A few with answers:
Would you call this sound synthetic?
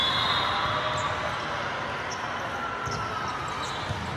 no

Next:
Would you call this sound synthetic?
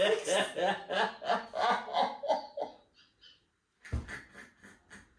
no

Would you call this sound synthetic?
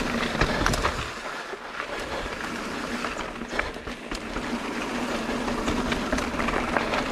no